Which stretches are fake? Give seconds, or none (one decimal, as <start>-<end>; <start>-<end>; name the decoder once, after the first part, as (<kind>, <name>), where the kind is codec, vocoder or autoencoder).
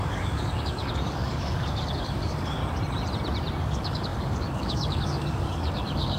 0.0-2.6 (codec, DAC); 3.6-6.2